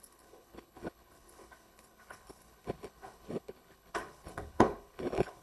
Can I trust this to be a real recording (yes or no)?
no